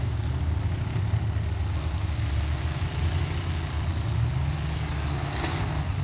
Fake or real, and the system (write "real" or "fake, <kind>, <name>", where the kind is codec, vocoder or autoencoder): real